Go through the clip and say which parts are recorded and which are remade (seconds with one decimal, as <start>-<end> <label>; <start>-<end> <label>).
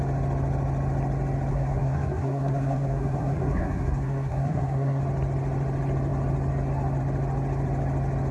0.0-1.5 recorded; 1.5-5.0 remade; 5.0-8.3 recorded